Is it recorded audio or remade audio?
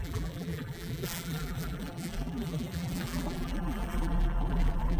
remade